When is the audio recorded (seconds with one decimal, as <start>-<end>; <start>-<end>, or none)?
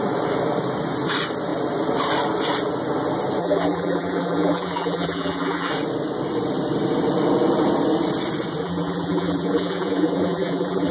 0.0-3.4; 5.7-8.6